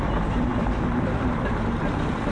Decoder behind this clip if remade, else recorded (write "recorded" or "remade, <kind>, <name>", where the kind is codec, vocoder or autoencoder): remade, vocoder, BigVGAN v2